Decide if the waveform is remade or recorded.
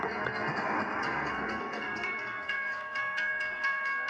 remade